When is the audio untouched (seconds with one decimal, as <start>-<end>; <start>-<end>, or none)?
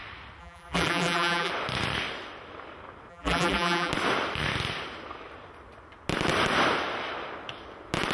0.0-0.4; 1.5-3.1; 3.9-8.1